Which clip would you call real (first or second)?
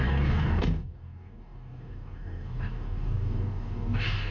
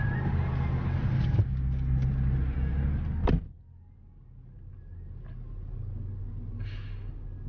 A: second